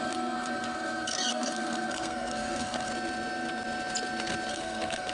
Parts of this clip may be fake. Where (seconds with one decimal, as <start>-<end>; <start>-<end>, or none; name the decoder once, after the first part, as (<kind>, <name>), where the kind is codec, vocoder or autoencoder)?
0.0-2.9 (codec, SNAC); 4.5-5.1